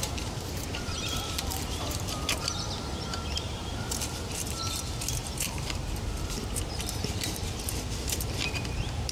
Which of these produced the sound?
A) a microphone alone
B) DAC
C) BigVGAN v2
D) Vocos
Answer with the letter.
C